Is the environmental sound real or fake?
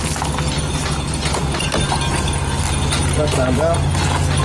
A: real